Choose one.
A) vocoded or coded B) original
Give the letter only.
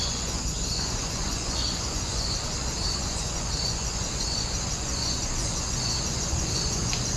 A